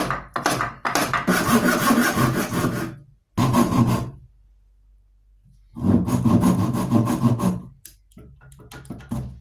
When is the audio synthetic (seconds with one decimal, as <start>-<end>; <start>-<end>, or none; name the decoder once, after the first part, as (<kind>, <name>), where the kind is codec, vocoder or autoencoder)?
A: none